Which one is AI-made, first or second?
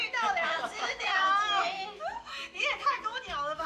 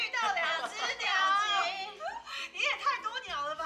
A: first